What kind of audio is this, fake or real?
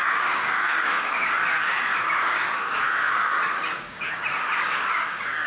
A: fake